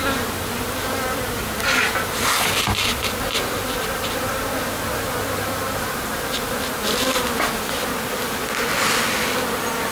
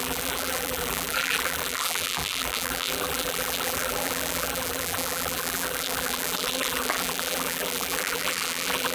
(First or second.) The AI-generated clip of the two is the second